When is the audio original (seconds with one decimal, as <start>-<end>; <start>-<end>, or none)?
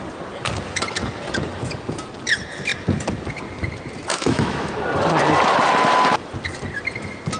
0.0-4.1; 4.7-7.4